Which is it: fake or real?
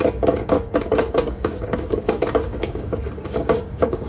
fake